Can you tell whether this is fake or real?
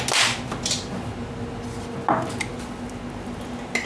real